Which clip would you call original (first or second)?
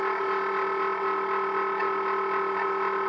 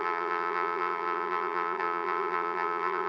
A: first